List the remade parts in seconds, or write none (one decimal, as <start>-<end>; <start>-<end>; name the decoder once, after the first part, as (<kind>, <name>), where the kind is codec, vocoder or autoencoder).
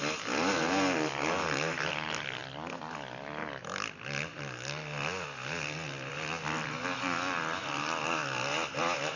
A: none